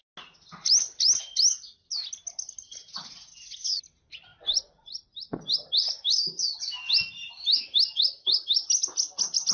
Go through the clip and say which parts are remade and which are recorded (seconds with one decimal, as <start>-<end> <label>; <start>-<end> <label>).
0.0-9.5 recorded